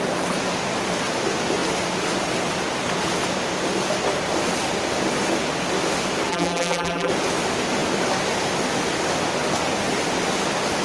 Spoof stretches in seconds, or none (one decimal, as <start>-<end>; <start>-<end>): 6.3-7.1